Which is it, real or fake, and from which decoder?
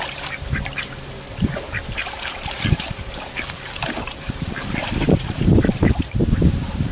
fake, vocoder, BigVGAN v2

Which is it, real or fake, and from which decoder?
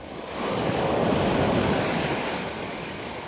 fake, codec, DAC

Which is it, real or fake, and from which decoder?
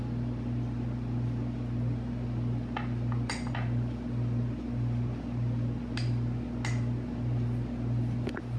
real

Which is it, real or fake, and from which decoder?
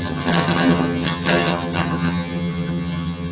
fake, vocoder, HiFi-GAN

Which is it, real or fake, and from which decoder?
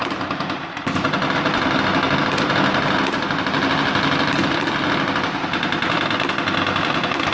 real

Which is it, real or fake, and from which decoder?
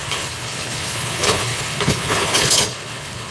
fake, codec, HILCodec